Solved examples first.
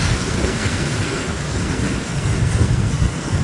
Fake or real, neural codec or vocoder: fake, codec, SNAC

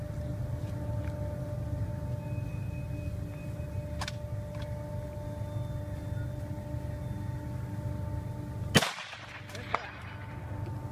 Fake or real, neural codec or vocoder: real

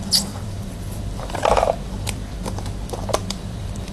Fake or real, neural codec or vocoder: fake, vocoder, BigVGAN v2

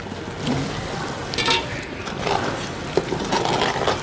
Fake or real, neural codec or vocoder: real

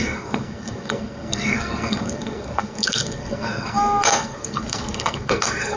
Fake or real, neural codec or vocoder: fake, codec, SNAC